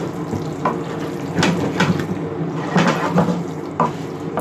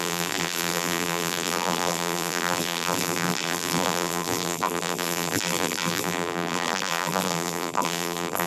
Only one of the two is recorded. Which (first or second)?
first